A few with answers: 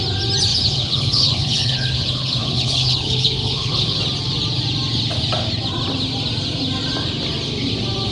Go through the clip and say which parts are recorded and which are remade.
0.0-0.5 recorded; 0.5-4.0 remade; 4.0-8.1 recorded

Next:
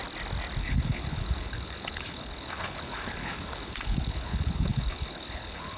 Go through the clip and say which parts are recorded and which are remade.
0.0-0.6 recorded; 0.6-5.8 remade

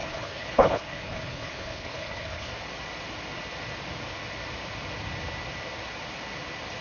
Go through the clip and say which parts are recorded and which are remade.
0.0-2.5 remade; 2.5-6.8 recorded

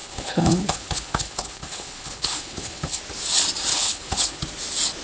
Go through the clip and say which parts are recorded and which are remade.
0.0-3.0 remade; 3.0-3.7 recorded; 3.7-4.4 remade; 4.4-5.0 recorded

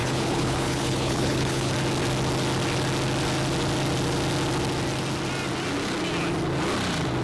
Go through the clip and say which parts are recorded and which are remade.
0.0-1.7 remade; 1.7-7.2 recorded